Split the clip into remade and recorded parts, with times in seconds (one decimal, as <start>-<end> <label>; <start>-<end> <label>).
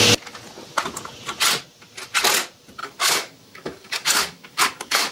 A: 0.0-2.8 recorded; 2.8-5.1 remade